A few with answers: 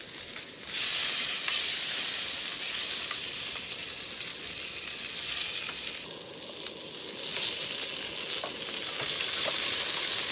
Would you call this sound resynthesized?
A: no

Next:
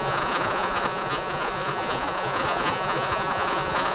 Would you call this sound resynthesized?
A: yes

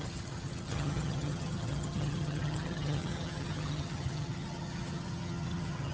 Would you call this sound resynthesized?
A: yes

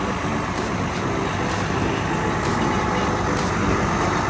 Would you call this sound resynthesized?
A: no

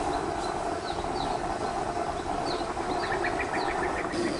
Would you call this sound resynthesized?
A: no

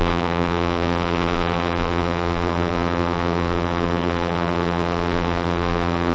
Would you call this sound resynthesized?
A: yes